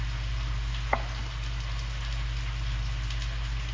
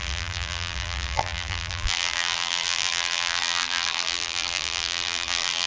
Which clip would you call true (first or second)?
first